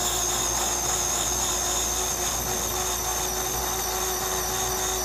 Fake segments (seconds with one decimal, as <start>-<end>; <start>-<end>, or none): none